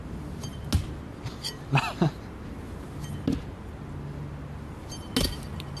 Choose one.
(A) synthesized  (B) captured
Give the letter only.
B